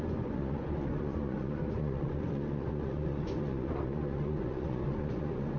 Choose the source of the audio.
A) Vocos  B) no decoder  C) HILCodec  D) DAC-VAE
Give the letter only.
A